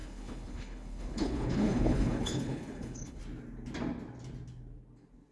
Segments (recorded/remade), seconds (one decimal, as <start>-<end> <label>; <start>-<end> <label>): 0.0-3.2 remade; 3.2-5.3 recorded